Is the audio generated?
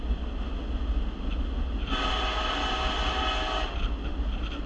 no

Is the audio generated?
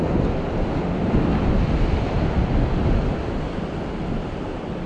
no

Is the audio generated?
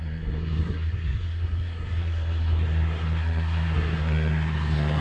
yes